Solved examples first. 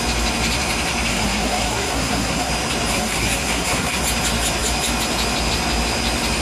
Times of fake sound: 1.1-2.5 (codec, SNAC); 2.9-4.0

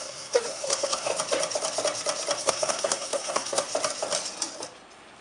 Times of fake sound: 0.0-1.1 (codec, SNAC); 2.4-3.6

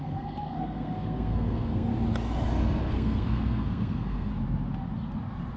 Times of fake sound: 0.0-1.9 (codec, SNAC); 2.9-4.3

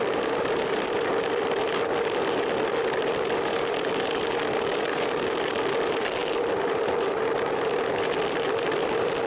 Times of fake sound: none

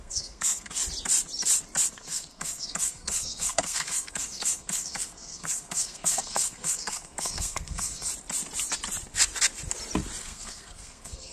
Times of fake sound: 0.0-0.8 (codec, SNAC); 1.9-8.1; 10.2-11.3

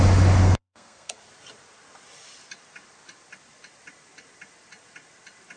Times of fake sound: 0.4-1.2 (codec, SNAC)

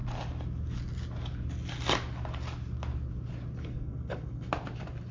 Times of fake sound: 3.6-4.5 (codec, SNAC)

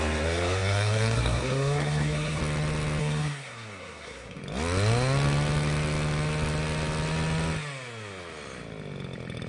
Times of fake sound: 0.0-2.4 (codec, SNAC); 3.0-4.4